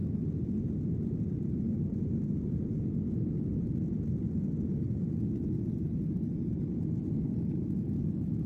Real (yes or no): yes